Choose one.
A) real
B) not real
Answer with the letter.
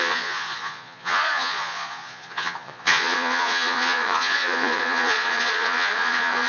B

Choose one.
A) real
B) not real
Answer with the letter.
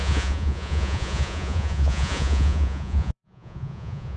B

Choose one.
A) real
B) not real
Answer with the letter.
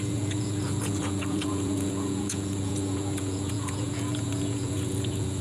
B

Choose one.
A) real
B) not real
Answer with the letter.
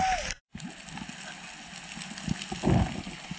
A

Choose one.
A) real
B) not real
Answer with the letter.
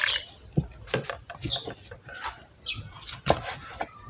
A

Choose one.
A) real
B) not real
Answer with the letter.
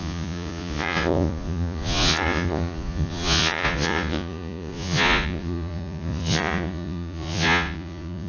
B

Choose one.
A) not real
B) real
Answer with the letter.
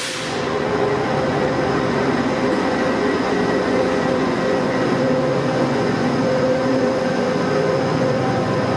A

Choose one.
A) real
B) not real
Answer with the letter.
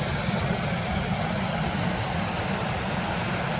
A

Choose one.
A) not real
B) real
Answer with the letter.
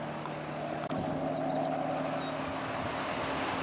B